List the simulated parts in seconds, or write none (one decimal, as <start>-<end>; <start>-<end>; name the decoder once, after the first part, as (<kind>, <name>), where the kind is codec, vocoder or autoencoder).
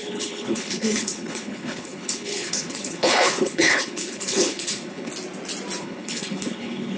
0.0-5.1 (codec, HILCodec); 5.8-7.0